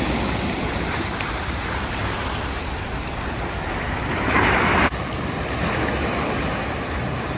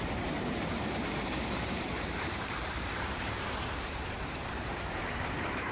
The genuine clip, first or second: first